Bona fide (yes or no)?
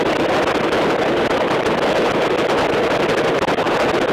yes